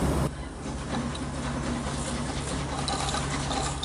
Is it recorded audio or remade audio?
recorded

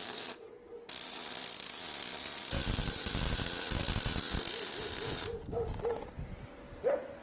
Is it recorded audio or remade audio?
recorded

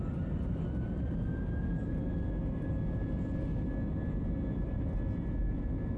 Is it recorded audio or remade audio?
recorded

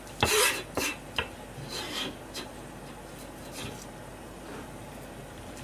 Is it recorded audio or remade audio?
recorded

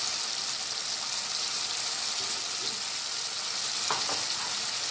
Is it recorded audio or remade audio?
recorded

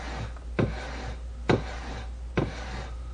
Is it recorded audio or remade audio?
recorded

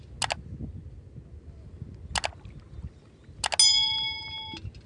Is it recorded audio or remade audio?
recorded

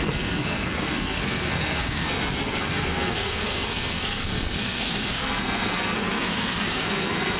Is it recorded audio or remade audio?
remade